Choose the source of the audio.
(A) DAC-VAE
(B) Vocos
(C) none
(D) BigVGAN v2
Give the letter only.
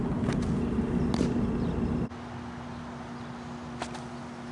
C